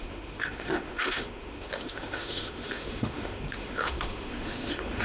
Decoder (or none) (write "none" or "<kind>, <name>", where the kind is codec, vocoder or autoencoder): autoencoder, DAC-VAE